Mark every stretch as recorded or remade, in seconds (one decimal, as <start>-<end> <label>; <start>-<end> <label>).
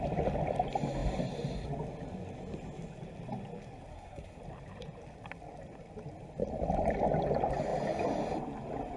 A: 0.0-3.9 recorded; 3.9-4.4 remade; 4.4-9.0 recorded